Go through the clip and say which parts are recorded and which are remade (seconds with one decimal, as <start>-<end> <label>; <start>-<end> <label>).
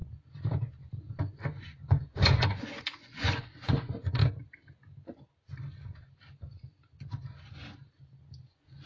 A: 0.0-1.6 recorded; 1.6-4.2 remade; 4.2-8.4 recorded; 8.4-8.9 remade